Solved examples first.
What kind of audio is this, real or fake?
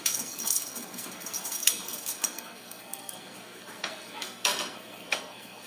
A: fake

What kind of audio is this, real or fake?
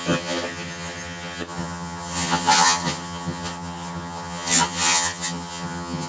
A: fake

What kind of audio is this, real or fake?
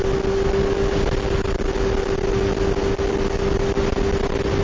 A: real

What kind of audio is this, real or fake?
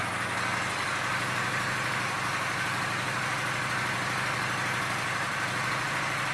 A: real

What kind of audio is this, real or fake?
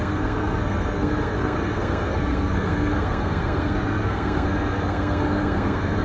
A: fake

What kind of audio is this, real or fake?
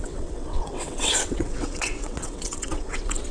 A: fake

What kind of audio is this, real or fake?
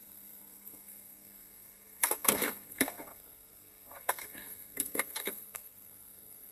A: fake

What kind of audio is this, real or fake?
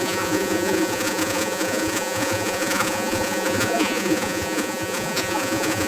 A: fake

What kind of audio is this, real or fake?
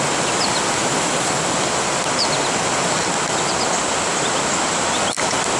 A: real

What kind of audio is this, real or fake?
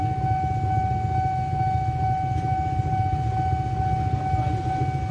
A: real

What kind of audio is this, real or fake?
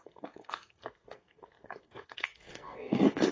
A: fake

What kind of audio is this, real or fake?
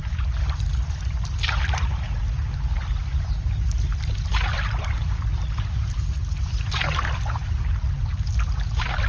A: real